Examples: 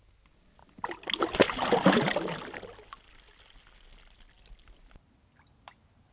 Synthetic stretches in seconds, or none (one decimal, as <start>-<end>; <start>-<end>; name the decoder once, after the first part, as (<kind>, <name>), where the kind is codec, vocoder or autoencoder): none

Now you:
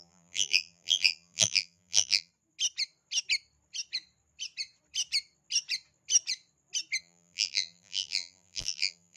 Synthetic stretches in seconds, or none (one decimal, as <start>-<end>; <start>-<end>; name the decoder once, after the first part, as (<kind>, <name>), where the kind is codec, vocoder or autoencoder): 0.0-2.3 (vocoder, BigVGAN v2); 7.0-9.2

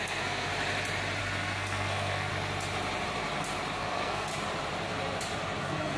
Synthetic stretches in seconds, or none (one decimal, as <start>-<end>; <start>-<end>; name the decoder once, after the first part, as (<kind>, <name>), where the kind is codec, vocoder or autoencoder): 0.0-0.5 (codec, SNAC); 1.2-2.3; 3.8-4.3; 5.6-6.0

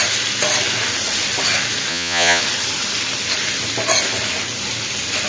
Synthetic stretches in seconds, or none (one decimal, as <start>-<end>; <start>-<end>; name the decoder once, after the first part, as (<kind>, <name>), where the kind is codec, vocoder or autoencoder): 1.9-2.4 (vocoder, Vocos)

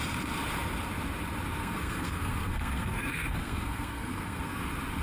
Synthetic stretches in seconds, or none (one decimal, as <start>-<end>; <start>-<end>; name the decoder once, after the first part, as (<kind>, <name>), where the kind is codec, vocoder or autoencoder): 1.6-4.6 (codec, SNAC)

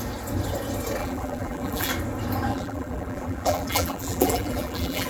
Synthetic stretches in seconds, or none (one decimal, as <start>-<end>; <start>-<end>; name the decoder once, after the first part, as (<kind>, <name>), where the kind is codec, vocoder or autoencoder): 1.0-1.9 (vocoder, BigVGAN v2); 2.5-5.1

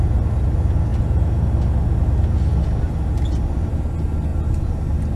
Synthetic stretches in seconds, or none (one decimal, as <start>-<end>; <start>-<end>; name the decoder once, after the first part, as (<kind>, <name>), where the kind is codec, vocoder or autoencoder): none